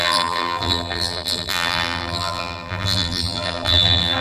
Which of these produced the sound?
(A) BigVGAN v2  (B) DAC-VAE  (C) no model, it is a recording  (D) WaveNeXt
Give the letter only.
A